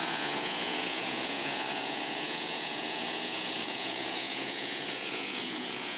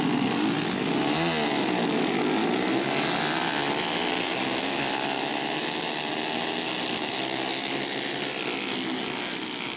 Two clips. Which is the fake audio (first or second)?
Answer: first